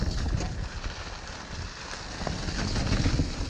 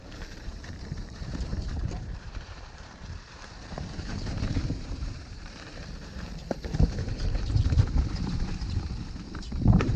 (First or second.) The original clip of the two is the first